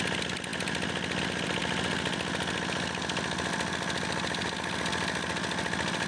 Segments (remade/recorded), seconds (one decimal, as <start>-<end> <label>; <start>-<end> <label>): 0.0-6.1 recorded